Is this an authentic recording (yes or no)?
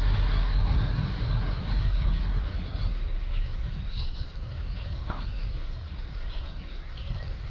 no